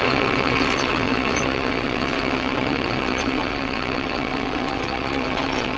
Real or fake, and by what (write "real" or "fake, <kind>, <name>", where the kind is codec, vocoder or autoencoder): fake, vocoder, WaveNeXt